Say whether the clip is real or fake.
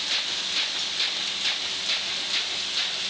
real